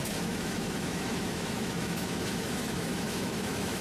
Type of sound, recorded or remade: remade